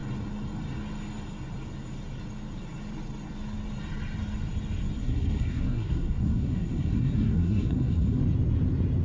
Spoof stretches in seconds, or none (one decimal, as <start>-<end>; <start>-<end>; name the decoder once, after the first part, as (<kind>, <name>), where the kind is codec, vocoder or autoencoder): 5.0-8.2 (codec, SNAC)